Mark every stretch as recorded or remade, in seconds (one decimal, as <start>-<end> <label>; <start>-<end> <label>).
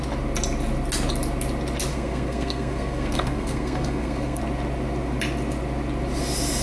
0.0-1.9 recorded; 1.9-4.4 remade; 4.4-6.6 recorded